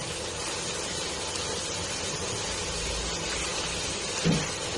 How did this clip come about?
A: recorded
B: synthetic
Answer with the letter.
A